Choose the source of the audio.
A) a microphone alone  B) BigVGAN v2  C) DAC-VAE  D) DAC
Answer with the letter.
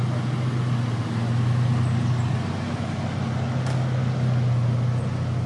A